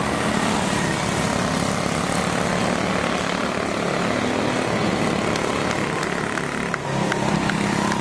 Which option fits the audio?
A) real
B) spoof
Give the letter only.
A